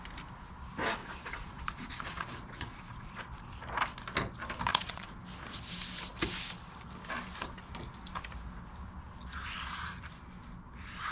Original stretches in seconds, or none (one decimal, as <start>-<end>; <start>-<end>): 0.0-1.0; 3.2-4.7; 5.2-11.1